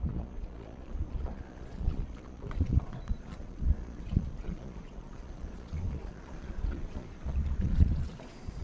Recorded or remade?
remade